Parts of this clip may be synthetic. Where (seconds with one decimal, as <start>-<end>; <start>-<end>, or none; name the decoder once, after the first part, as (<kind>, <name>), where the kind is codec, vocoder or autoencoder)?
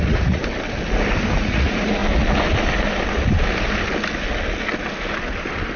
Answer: 0.0-0.4 (vocoder, Vocos); 1.4-2.0